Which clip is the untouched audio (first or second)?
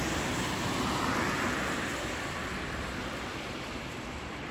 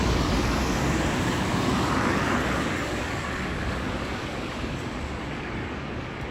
first